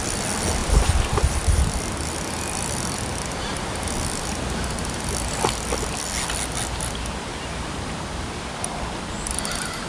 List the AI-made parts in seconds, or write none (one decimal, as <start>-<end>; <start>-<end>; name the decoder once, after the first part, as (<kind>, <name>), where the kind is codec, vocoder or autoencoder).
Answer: 0.6-1.6 (vocoder, BigVGAN v2)